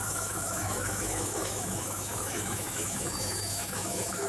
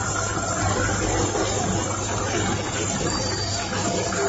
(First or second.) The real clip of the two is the second